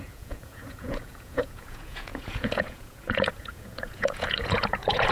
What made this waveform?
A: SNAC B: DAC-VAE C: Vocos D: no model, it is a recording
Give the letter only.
C